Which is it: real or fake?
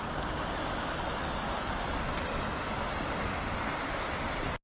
real